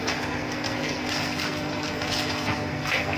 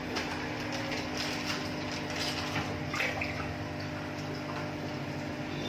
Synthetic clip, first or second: first